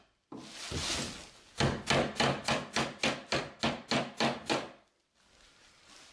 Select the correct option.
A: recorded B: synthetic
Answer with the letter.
A